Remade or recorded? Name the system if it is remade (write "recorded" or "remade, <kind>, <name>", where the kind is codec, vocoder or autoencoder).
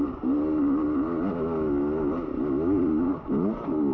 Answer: recorded